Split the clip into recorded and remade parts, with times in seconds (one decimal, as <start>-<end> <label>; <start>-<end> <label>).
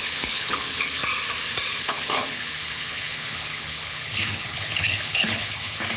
0.0-1.0 remade; 1.0-1.8 recorded; 1.8-6.0 remade